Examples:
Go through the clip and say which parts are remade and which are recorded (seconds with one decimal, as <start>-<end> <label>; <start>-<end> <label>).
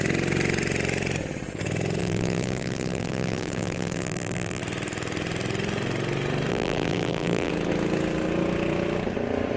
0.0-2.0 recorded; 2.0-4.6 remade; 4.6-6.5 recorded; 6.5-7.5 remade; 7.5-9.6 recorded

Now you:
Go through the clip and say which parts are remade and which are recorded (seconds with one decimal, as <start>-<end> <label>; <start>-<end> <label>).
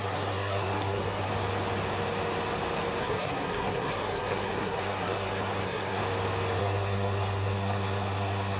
0.0-1.3 remade; 1.3-3.0 recorded; 3.0-6.0 remade; 6.0-6.6 recorded; 6.6-8.6 remade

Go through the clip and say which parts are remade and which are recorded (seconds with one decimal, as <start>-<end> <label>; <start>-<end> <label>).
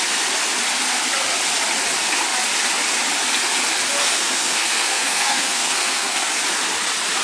0.0-4.0 recorded; 4.0-6.4 remade; 6.4-7.2 recorded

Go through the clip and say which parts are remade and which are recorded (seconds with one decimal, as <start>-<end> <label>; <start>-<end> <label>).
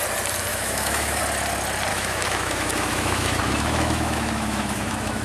0.0-0.5 recorded; 0.5-1.2 remade; 1.2-1.9 recorded; 1.9-5.2 remade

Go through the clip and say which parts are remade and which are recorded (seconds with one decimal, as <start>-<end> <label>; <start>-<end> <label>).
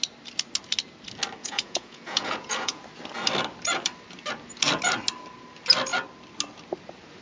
0.0-1.4 recorded; 1.4-2.8 remade; 2.8-7.2 recorded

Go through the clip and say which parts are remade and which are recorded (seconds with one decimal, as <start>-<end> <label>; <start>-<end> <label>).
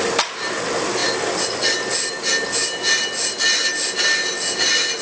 0.0-5.0 recorded